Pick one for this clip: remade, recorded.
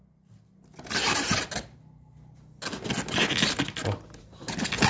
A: recorded